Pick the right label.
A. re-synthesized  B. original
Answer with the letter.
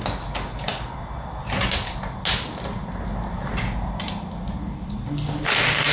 B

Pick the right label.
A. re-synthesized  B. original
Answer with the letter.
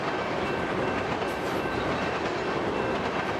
B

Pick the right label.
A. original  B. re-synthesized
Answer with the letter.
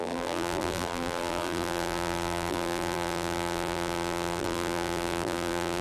B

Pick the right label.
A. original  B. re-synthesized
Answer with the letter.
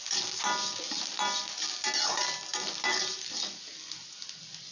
A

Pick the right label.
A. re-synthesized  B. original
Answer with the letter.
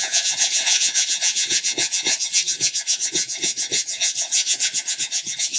A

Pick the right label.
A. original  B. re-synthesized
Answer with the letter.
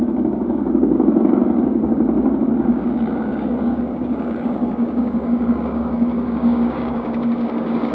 B